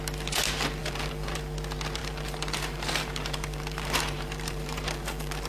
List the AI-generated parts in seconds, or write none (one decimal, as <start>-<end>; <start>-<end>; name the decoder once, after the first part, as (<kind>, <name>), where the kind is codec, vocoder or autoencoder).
0.8-1.4 (vocoder, BigVGAN v2); 2.0-5.5